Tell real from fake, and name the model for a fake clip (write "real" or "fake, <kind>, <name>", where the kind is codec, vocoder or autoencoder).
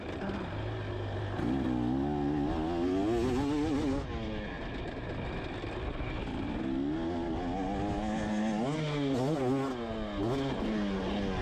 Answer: real